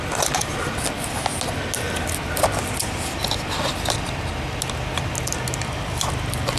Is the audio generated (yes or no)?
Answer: no